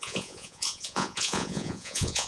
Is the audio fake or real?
fake